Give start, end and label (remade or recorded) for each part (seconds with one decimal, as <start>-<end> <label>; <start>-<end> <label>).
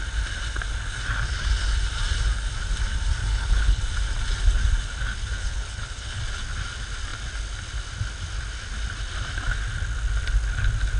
0.0-3.2 recorded; 3.2-3.8 remade; 3.8-5.4 recorded; 5.4-6.2 remade; 6.2-11.0 recorded